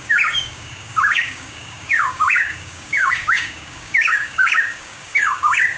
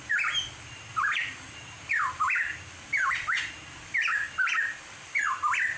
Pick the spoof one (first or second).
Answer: first